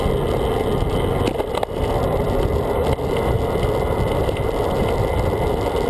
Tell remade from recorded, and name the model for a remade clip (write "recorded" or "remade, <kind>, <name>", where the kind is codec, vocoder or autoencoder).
recorded